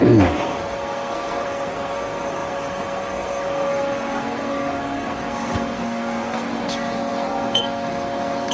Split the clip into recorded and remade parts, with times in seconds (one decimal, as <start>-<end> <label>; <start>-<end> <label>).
0.0-8.5 remade